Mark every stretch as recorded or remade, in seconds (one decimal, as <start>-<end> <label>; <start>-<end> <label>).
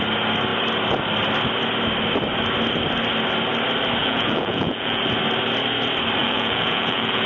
0.0-4.0 recorded; 4.0-5.0 remade; 5.0-6.2 recorded; 6.2-7.3 remade